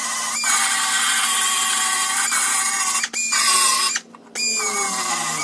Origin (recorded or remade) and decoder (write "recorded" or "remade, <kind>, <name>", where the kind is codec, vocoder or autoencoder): recorded